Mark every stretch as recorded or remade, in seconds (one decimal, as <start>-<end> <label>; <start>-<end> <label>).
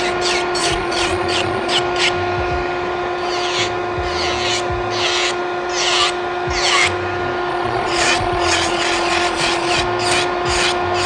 0.0-0.6 recorded; 0.6-1.7 remade; 1.7-7.5 recorded; 7.5-9.8 remade; 9.8-11.1 recorded